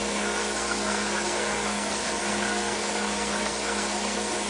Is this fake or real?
fake